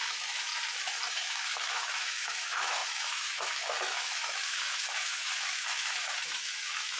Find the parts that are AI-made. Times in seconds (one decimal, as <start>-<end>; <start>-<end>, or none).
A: 0.0-0.5; 1.1-7.0